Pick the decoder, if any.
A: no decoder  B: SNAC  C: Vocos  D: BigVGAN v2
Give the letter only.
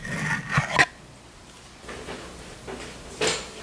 A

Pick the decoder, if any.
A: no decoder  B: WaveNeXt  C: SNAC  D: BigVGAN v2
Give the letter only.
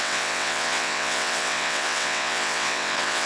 B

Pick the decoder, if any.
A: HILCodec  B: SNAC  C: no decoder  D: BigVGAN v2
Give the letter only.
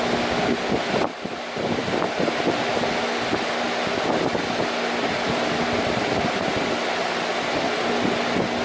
C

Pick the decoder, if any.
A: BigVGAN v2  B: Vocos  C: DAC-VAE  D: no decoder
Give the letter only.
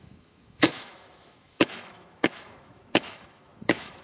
C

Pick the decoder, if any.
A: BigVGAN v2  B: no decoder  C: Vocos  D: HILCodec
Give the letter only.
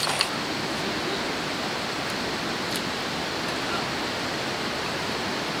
B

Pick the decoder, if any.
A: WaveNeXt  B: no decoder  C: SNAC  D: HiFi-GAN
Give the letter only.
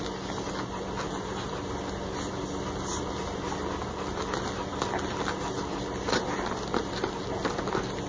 B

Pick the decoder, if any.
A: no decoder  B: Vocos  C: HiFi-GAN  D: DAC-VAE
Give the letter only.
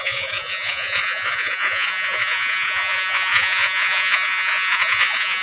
B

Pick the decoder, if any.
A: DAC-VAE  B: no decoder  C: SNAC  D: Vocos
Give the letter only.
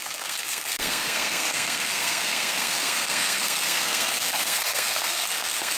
C